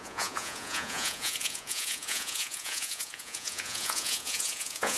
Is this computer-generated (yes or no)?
yes